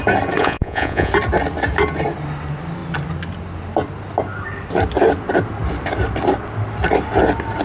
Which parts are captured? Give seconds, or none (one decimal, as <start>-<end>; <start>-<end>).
0.0-0.4; 1.1-7.6